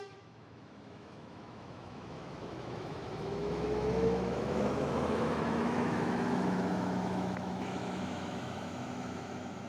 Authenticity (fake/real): fake